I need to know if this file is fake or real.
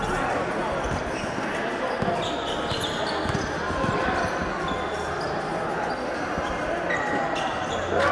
real